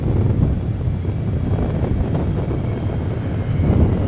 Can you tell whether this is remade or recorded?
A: recorded